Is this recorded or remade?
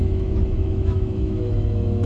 remade